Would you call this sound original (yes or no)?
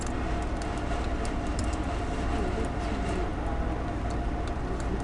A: yes